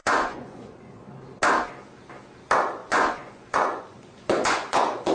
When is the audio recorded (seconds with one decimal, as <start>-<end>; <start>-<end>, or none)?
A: 1.0-2.8